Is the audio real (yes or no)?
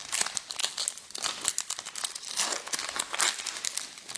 yes